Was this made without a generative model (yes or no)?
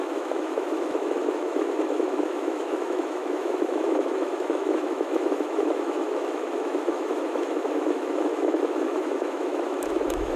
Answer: no